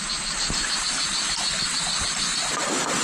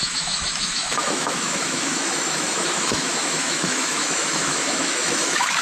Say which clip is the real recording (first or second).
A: first